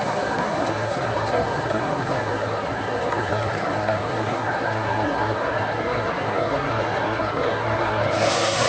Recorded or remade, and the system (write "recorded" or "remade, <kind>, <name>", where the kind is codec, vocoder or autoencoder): remade, codec, SNAC